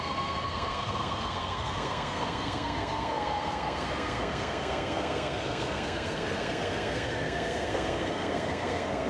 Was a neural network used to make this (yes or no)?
yes